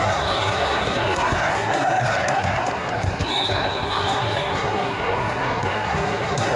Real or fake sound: fake